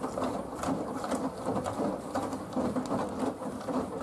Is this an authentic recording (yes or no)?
yes